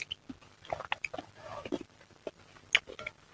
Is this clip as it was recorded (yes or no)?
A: yes